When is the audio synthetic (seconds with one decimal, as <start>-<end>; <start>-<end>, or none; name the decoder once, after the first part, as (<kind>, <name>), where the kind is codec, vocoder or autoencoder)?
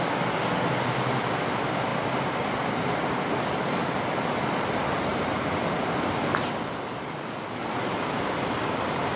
1.9-7.0 (vocoder, BigVGAN v2)